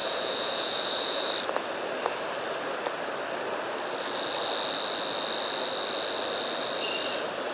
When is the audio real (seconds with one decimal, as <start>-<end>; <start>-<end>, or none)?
1.3-7.5